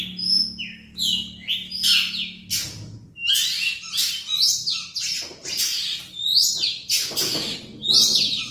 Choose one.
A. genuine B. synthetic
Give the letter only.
A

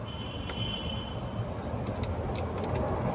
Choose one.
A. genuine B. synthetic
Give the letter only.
A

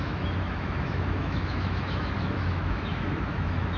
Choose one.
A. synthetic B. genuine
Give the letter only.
A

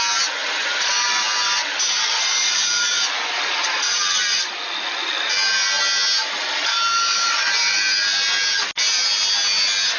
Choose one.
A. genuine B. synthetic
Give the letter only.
A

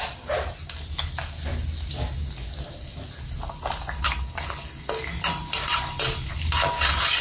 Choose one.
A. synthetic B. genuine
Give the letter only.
B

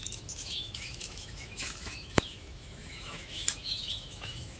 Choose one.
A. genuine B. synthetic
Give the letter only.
B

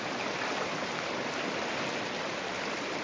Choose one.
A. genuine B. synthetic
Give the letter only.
A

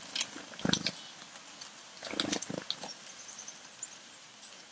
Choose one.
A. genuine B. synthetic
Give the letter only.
A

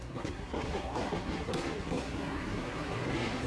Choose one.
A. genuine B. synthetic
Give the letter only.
B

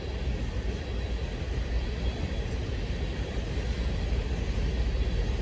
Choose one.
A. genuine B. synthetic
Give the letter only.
A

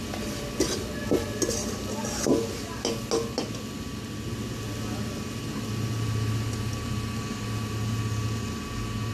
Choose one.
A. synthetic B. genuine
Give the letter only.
B